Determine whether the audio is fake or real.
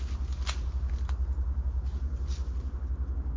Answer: real